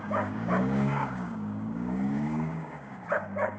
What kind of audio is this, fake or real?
fake